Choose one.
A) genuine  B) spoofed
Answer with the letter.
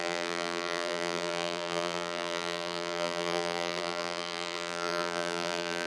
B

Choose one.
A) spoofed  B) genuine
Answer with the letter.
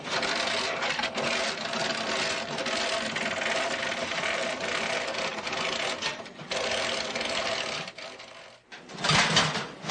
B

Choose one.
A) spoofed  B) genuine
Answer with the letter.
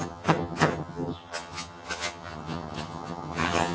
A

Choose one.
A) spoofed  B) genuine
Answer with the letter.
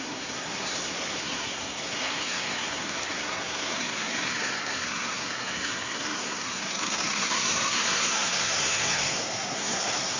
A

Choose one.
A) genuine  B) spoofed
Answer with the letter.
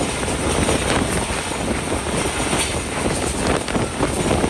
A